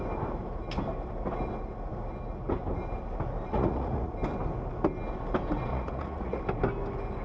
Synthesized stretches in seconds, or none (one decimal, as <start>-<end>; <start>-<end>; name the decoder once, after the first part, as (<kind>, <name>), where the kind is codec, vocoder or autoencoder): 3.5-4.1 (vocoder, Vocos); 5.7-6.4